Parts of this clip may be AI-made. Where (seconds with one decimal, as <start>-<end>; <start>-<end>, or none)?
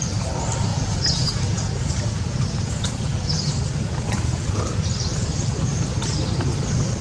0.7-4.6; 5.1-6.0